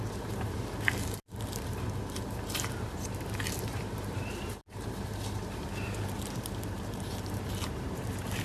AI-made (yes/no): yes